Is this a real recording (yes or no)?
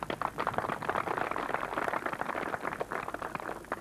yes